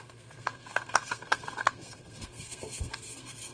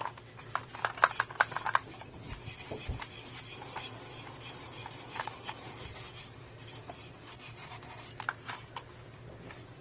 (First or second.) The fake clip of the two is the first